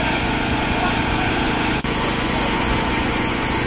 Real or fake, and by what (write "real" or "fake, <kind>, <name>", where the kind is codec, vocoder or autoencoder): fake, vocoder, Vocos